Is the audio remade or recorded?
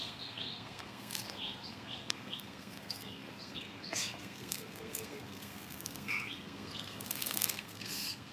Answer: remade